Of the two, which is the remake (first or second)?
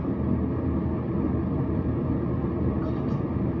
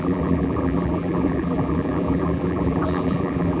second